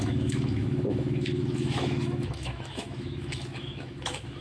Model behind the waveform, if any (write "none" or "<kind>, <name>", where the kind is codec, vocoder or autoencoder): autoencoder, DAC-VAE